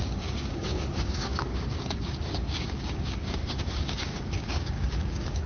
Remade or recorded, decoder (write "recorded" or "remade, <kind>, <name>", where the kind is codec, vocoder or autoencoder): remade, codec, DAC